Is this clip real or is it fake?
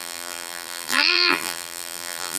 fake